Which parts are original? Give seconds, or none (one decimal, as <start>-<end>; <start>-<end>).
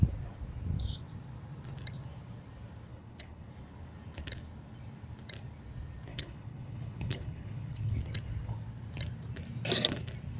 0.0-2.9; 3.5-6.1; 8.0-10.4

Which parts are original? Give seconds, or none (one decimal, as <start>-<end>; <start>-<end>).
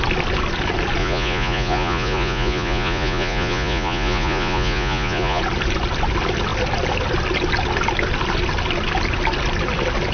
0.0-1.0; 5.4-10.1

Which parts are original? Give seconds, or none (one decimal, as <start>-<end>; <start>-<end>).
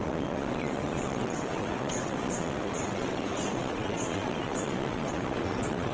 none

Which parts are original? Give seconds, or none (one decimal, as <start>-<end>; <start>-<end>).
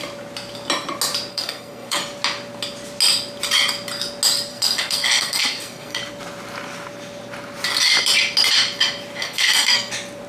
0.0-1.3; 2.0-4.5; 6.0-9.2; 9.9-10.3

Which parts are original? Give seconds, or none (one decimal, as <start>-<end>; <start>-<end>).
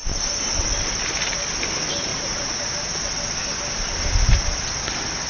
0.0-2.1; 2.6-5.3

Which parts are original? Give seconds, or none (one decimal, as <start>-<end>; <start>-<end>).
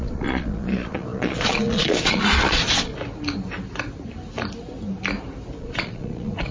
2.9-5.6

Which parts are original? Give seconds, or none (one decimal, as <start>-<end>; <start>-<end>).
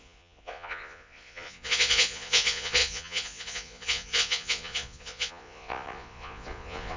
none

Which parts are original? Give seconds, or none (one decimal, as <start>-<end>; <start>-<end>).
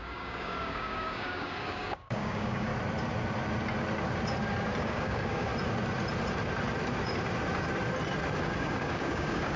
2.7-4.8; 5.5-8.4